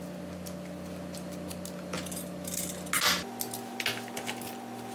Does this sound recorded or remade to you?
recorded